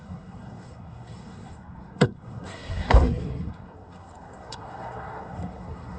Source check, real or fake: fake